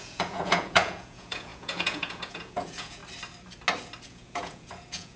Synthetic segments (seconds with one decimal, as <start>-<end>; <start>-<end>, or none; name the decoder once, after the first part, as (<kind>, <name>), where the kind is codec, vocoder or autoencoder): 0.0-3.0 (vocoder, Vocos); 4.0-5.2